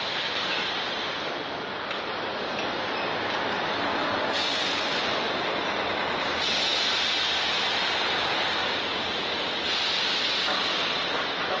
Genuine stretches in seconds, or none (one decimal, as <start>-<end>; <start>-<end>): 0.0-3.9; 5.3-11.6